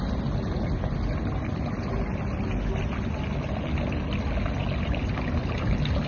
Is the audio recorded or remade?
recorded